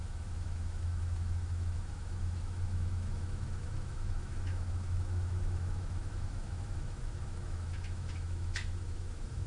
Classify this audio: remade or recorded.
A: remade